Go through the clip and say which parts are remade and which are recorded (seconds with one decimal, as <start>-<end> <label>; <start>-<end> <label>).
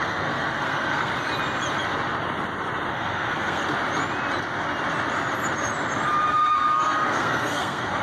0.0-1.1 remade; 1.1-2.9 recorded; 2.9-3.6 remade; 3.6-6.3 recorded; 6.3-8.0 remade